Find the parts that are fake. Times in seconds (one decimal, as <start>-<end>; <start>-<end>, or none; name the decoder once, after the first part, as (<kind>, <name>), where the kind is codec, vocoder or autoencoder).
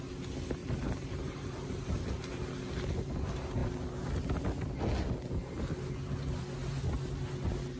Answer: 0.6-2.0 (vocoder, BigVGAN v2)